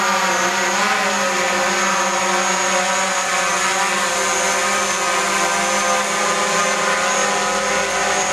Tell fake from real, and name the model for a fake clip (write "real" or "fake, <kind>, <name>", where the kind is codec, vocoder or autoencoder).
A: real